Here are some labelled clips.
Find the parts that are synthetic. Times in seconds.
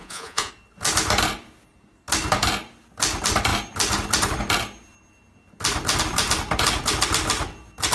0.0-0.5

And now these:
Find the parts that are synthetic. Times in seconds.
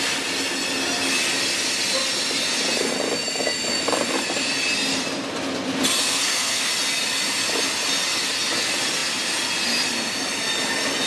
6.0-6.7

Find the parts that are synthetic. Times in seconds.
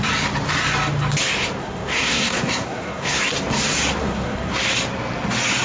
1.6-3.2; 4.0-4.5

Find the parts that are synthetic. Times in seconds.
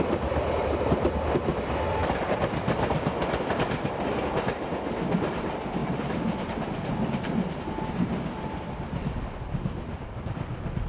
5.8-9.2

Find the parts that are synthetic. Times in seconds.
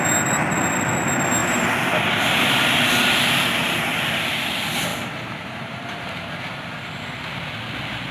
4.9-6.4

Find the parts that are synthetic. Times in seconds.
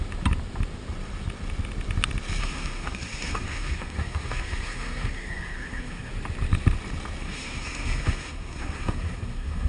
2.4-6.1; 7.2-9.7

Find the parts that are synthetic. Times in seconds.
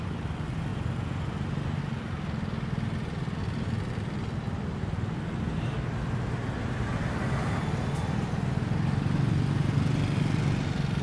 0.7-1.8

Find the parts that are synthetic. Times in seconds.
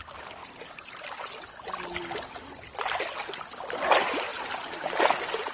none